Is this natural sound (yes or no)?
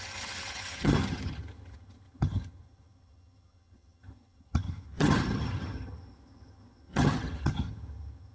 no